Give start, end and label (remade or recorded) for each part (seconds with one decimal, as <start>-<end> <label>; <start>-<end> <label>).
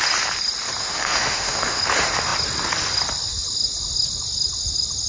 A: 0.0-0.8 recorded; 0.8-1.8 remade; 1.8-5.1 recorded